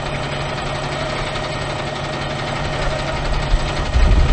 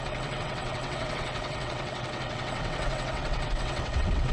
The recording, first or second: first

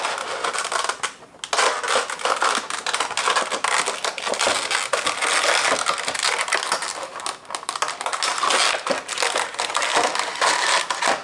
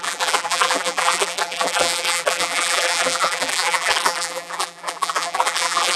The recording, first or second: first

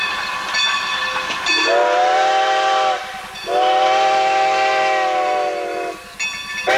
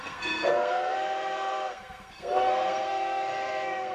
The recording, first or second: first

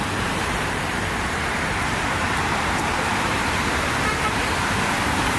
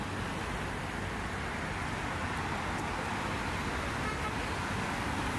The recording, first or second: second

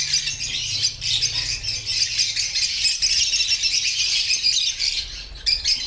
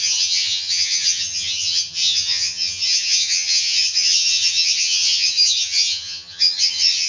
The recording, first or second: first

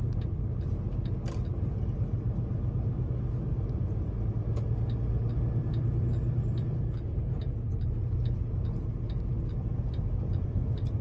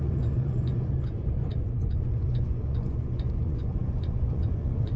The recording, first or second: first